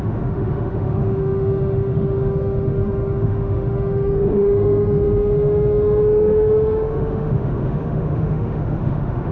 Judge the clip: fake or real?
fake